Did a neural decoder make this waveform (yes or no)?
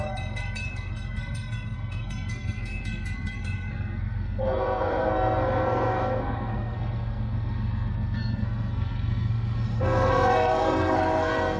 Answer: yes